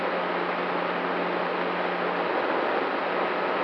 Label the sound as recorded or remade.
recorded